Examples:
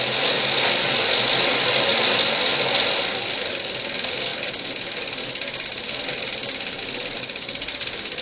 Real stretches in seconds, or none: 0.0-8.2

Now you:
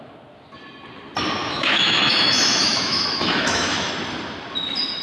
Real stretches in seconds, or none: 0.0-1.4; 3.9-5.0